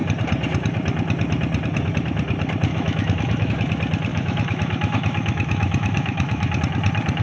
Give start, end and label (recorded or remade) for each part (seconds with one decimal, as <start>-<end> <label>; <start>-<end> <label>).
0.0-2.7 recorded; 2.7-3.5 remade; 3.5-4.1 recorded; 4.1-6.6 remade; 6.6-7.2 recorded